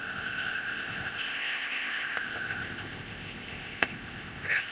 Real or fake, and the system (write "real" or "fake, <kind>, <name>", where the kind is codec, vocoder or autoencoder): fake, codec, ZipCodec